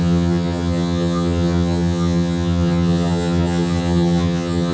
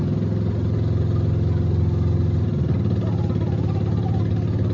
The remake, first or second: first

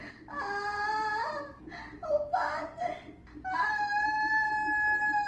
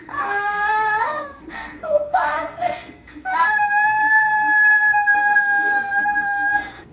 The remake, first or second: second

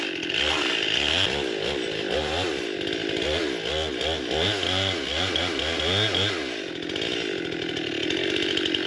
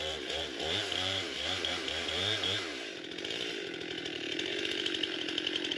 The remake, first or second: second